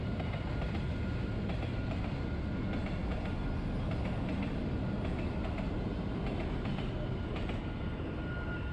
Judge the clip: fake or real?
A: real